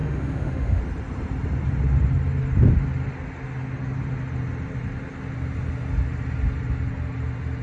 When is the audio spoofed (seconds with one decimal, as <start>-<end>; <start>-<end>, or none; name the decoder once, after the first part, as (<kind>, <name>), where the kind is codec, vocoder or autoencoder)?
0.0-0.8 (autoencoder, DAC-VAE)